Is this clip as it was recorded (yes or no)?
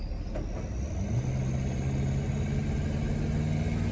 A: yes